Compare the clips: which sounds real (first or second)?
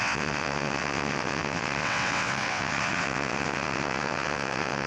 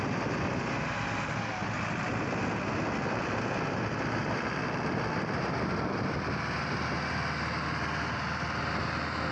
second